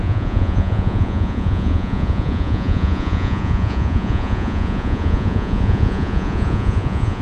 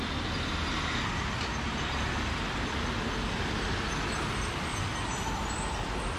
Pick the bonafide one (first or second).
second